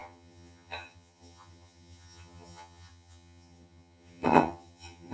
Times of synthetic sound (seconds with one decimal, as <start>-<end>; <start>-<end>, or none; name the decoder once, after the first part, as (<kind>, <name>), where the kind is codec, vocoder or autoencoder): 0.0-5.1 (vocoder, HiFi-GAN)